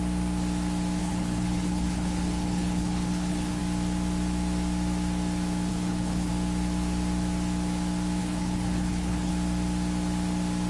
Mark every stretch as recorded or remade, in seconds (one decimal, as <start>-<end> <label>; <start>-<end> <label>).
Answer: 0.0-1.0 recorded; 1.0-3.6 remade; 3.6-5.7 recorded; 5.7-6.3 remade; 6.3-8.2 recorded; 8.2-9.3 remade; 9.3-10.7 recorded